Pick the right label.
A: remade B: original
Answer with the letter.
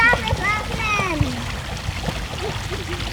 B